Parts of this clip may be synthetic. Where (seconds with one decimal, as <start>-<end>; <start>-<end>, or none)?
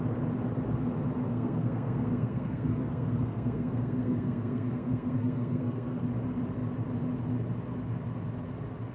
1.2-6.0